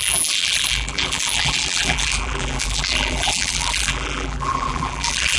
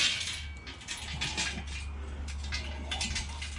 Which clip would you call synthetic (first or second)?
first